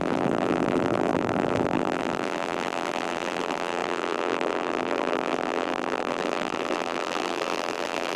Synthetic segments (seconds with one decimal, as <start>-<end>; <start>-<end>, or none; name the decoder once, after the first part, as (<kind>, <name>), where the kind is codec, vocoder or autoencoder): 0.0-8.2 (vocoder, BigVGAN v2)